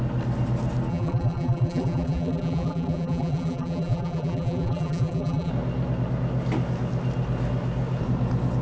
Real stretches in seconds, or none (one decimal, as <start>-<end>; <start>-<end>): 0.0-0.9; 5.5-8.6